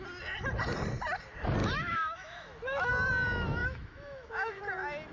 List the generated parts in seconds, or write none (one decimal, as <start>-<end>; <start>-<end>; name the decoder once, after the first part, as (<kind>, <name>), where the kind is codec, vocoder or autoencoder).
1.6-2.9 (autoencoder, DAC-VAE); 3.6-4.6